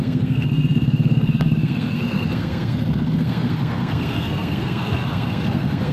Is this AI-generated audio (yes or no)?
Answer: yes